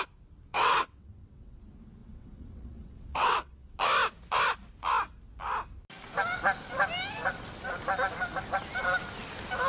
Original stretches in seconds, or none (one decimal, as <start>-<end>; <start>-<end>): 0.0-0.5; 1.6-2.0; 3.8-9.7